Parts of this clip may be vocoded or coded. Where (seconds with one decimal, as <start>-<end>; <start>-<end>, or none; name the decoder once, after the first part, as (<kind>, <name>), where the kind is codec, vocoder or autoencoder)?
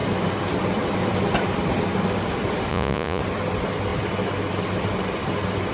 2.7-3.2 (vocoder, Vocos)